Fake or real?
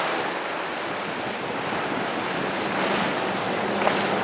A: real